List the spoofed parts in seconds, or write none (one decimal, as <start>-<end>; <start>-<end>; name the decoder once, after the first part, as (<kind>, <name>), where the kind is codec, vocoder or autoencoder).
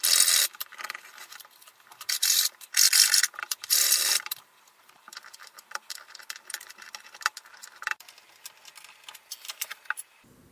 1.9-6.2 (vocoder, BigVGAN v2); 7.5-8.1